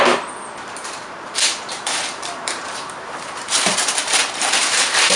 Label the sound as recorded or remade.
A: remade